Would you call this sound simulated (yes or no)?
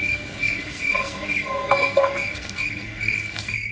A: yes